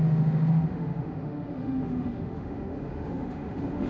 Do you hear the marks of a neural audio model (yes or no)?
yes